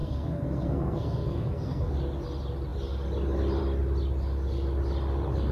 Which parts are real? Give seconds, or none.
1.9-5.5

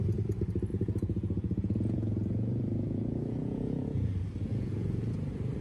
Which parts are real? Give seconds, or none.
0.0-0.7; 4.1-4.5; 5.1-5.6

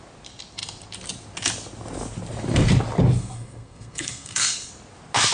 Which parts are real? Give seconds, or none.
0.0-3.2; 4.7-5.3

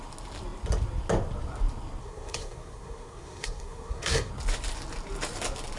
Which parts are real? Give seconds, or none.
0.0-2.0; 4.3-5.8